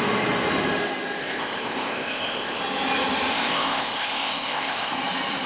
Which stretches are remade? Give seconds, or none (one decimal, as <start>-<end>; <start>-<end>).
1.2-2.6; 3.3-4.9